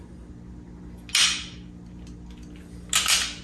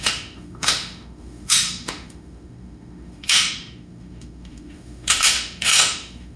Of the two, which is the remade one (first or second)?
second